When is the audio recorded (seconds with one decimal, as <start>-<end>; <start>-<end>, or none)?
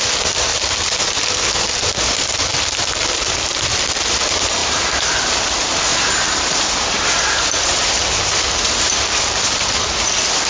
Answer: 0.0-4.6; 5.3-5.9; 7.7-10.5